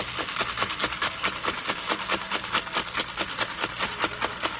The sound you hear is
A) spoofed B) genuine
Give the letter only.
B